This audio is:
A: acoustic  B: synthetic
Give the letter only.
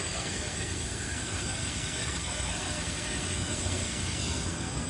B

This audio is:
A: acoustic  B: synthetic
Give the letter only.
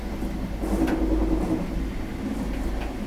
A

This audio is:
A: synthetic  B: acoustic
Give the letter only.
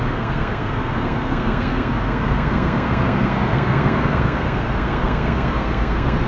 A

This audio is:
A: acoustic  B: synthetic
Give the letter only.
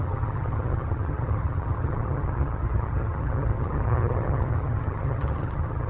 B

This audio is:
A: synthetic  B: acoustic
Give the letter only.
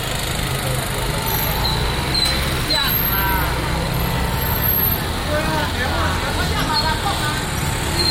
B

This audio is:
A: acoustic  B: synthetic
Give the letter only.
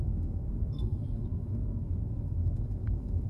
B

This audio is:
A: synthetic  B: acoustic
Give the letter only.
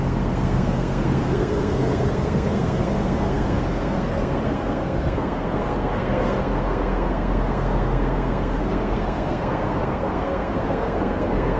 A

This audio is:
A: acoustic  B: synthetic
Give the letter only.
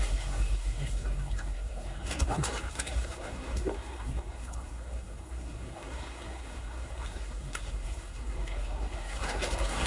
B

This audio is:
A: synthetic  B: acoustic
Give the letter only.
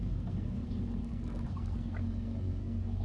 A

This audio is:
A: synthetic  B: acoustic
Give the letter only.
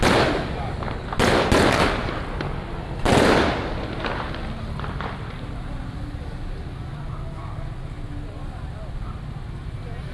B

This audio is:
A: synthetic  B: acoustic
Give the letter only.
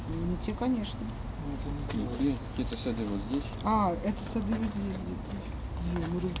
B